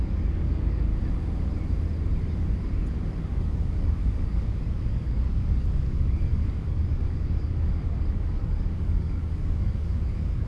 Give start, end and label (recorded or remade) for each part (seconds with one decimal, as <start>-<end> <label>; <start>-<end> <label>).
0.0-0.9 remade; 0.9-3.2 recorded; 3.2-10.5 remade

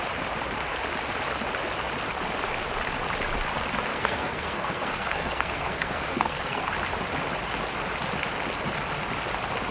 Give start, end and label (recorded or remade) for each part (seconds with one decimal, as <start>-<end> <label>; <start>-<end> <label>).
0.0-3.9 recorded; 3.9-6.7 remade; 6.7-9.7 recorded